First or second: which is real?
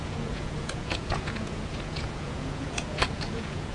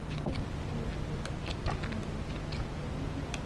second